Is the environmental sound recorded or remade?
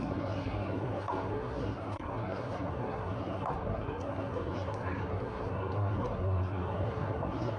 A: remade